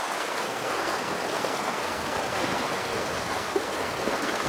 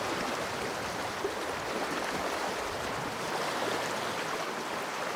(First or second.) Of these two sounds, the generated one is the first